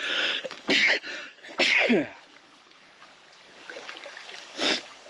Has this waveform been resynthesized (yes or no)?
yes